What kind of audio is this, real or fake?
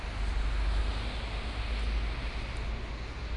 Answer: real